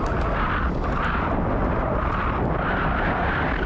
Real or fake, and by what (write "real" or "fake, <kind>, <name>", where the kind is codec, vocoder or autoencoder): real